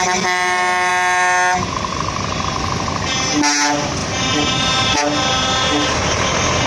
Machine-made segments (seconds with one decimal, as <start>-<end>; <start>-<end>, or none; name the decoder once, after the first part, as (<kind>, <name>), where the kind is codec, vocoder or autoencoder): none